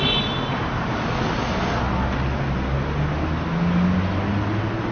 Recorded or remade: recorded